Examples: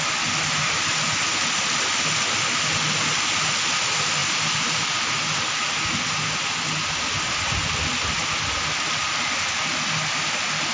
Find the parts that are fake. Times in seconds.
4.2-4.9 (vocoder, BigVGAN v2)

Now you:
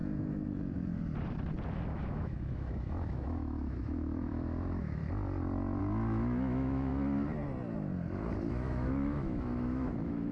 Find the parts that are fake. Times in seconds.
1.9-5.0 (autoencoder, DAC-VAE); 5.8-6.9; 8.5-10.3

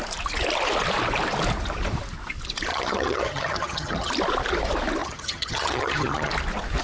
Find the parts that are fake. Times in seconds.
2.7-4.1 (vocoder, HiFi-GAN); 5.0-6.3

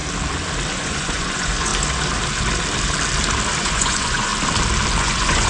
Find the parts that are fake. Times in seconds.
0.7-1.7 (vocoder, Vocos); 3.6-4.3; 5.0-5.5

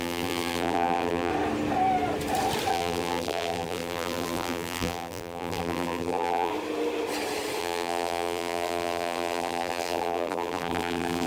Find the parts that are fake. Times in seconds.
0.0-1.3 (vocoder, BigVGAN v2); 2.7-6.5; 7.6-11.3